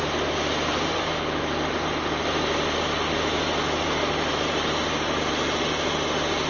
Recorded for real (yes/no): yes